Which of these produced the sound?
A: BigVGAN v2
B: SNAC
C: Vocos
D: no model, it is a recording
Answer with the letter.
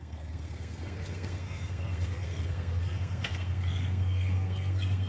B